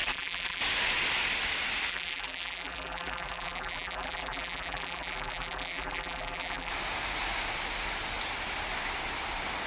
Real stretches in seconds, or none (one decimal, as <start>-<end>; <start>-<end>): 0.6-1.9; 6.7-9.7